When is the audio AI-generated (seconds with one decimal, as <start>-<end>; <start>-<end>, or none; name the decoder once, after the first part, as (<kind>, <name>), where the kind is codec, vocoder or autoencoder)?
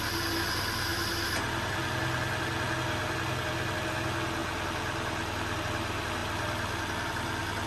none